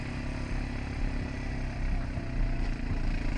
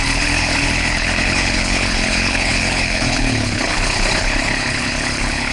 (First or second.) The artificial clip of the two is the second